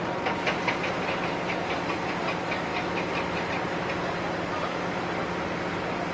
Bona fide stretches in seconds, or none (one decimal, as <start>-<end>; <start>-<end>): 0.0-6.1